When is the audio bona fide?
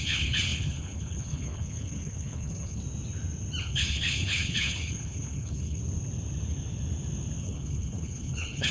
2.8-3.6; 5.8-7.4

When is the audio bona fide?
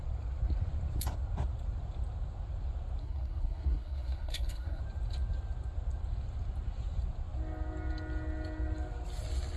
0.0-3.0; 4.8-9.6